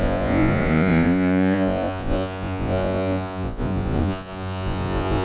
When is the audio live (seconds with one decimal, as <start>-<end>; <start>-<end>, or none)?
none